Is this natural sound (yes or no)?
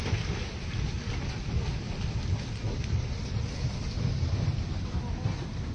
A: yes